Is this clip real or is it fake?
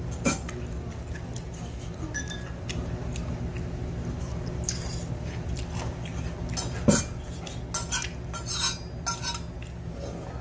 real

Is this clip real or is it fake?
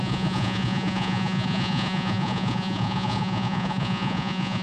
fake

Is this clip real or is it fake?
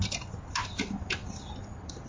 real